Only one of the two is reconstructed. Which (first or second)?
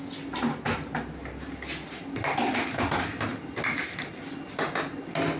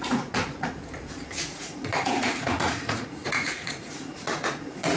second